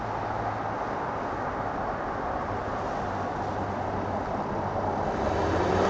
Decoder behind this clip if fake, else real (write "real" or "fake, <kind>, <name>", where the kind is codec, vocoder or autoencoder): real